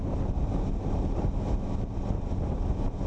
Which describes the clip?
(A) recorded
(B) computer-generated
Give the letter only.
A